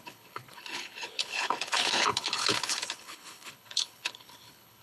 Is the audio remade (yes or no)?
yes